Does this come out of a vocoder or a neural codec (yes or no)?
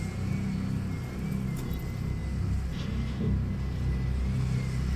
no